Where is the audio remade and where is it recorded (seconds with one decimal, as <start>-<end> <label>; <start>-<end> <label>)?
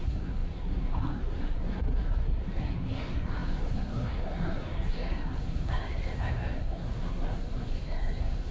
0.0-8.5 remade